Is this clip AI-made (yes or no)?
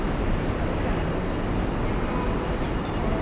no